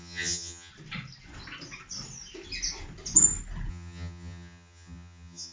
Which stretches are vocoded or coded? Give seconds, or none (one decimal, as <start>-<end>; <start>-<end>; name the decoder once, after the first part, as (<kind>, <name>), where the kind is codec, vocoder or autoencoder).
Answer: 0.0-0.7 (vocoder, HiFi-GAN); 3.7-5.5